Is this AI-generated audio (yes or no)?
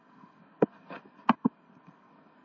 yes